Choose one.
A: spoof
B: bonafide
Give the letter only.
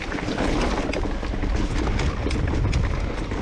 B